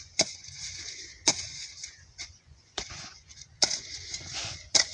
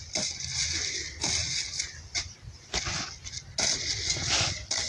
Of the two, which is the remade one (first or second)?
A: first